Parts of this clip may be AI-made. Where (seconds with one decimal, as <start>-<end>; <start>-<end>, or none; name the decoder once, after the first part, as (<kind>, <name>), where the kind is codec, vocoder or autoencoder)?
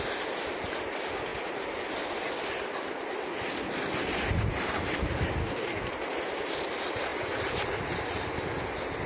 5.4-5.9 (codec, DAC)